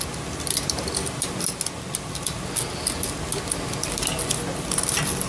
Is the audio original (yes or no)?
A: yes